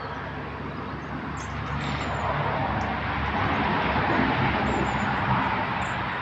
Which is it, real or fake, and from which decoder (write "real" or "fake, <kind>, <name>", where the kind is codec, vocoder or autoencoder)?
real